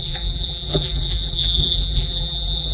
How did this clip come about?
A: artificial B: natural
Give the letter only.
A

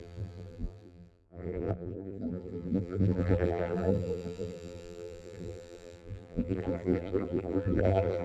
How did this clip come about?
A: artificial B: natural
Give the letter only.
A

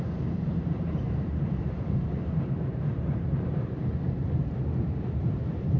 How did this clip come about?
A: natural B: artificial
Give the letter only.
B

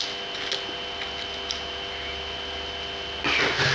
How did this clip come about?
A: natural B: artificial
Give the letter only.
A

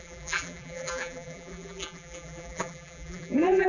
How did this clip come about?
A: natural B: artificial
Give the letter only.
B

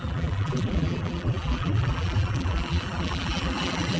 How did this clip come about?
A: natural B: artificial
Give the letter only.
B